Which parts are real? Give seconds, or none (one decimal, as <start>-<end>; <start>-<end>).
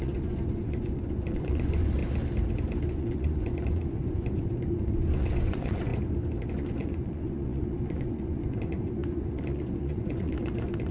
2.0-2.9; 5.9-6.5